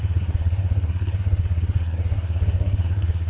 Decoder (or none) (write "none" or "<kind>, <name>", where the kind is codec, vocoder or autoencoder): codec, SNAC